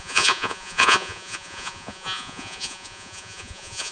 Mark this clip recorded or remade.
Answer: remade